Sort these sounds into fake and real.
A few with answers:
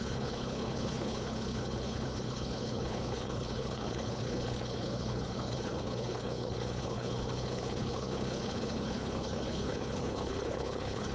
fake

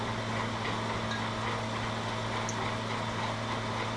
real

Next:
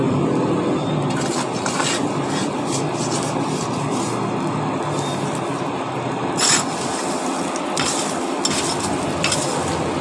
real